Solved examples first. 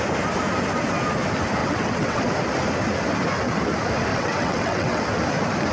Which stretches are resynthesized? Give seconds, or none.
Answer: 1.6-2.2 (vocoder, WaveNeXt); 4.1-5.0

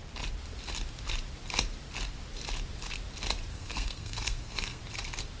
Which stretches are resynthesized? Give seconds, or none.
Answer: 3.5-4.8 (codec, SNAC)

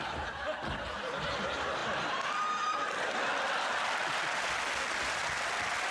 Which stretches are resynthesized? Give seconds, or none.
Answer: none

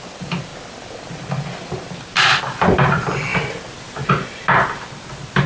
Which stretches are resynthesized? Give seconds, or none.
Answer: none

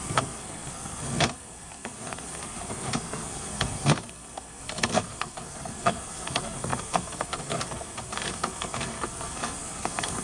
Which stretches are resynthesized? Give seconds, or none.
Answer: 0.0-10.2 (codec, SNAC)

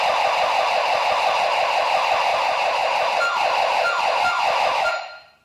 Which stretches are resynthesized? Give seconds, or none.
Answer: 2.3-3.2 (vocoder, BigVGAN v2); 4.7-5.4